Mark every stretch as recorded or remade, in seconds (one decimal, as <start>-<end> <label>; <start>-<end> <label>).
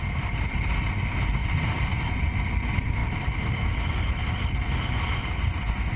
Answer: 0.0-1.4 recorded; 1.4-2.0 remade; 2.0-6.0 recorded